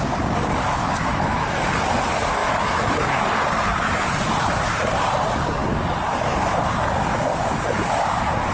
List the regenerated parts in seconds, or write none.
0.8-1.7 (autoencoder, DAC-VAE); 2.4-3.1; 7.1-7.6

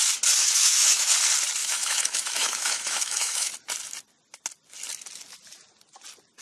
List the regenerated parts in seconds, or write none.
0.4-1.1 (autoencoder, DAC-VAE); 1.6-3.5

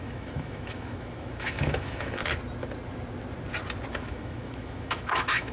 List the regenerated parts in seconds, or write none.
0.0-2.2 (autoencoder, DAC-VAE); 4.0-5.5

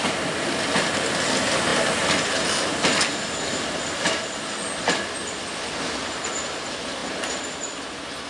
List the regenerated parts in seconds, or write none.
none

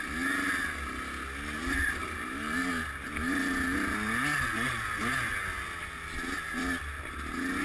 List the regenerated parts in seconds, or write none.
2.0-2.7 (vocoder, BigVGAN v2)

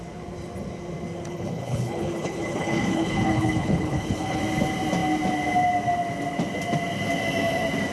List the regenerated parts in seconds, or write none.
1.3-4.4 (codec, HILCodec)